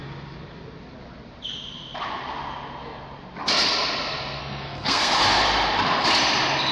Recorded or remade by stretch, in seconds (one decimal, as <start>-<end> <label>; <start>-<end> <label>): 0.0-4.4 recorded; 4.4-5.2 remade; 5.2-6.7 recorded